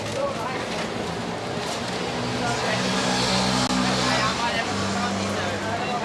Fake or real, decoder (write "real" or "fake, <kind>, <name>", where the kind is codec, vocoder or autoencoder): real